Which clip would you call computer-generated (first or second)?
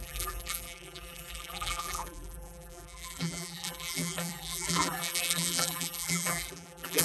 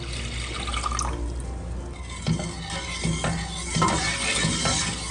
first